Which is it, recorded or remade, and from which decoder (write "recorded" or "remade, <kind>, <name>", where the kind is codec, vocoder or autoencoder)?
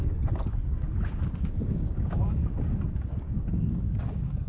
remade, codec, DAC